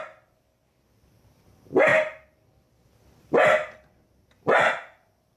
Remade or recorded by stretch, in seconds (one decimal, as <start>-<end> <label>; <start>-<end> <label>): 0.0-1.9 recorded; 1.9-3.0 remade; 3.0-5.4 recorded